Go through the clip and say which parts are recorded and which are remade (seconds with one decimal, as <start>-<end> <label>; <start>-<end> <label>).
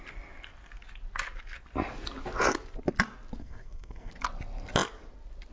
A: 0.0-3.4 recorded; 3.4-4.1 remade; 4.1-5.5 recorded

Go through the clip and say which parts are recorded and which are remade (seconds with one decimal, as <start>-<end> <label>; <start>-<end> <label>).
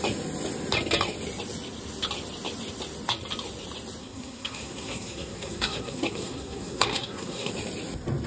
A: 0.0-4.0 recorded; 4.0-7.5 remade; 7.5-8.3 recorded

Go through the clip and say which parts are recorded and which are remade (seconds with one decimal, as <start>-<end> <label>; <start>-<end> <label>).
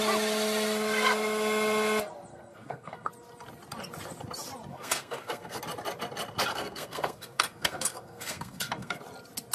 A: 0.0-2.3 recorded; 2.3-3.1 remade; 3.1-4.7 recorded; 4.7-5.6 remade; 5.6-6.5 recorded; 6.5-9.0 remade; 9.0-9.5 recorded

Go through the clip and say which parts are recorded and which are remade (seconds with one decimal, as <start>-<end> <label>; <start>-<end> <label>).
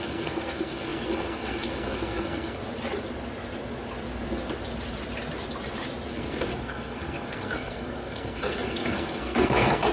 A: 0.0-2.6 remade; 2.6-6.1 recorded; 6.1-9.9 remade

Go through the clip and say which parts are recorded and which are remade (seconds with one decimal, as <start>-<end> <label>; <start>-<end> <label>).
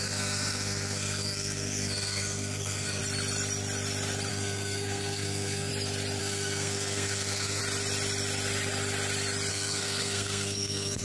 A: 0.0-3.0 remade; 3.0-4.3 recorded; 4.3-5.7 remade; 5.7-6.2 recorded; 6.2-7.6 remade; 7.6-9.5 recorded; 9.5-11.0 remade